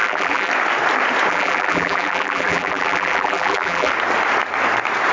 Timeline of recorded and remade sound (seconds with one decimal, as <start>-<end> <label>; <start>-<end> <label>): 0.0-0.5 remade; 0.5-1.3 recorded; 1.3-3.9 remade; 3.9-5.1 recorded